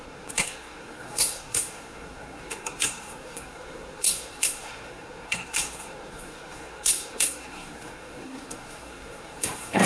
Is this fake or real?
fake